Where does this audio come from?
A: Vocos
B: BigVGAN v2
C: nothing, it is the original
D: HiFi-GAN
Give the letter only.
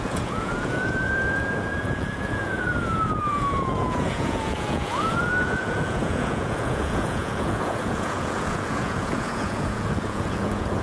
A